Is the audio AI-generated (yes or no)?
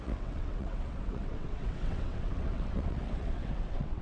yes